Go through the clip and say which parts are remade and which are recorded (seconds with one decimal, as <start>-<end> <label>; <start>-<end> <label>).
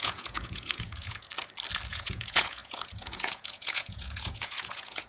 0.0-1.3 remade; 1.3-1.9 recorded; 1.9-5.1 remade